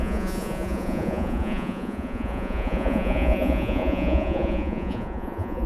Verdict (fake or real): fake